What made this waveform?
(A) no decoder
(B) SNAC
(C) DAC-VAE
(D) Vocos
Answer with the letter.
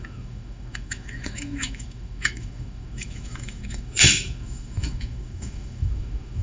C